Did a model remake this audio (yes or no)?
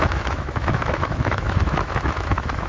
yes